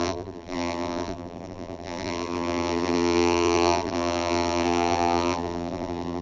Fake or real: fake